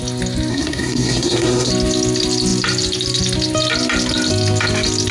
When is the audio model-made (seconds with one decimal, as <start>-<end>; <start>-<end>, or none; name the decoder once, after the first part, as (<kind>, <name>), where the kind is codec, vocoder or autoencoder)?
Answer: 0.5-1.7 (codec, SNAC)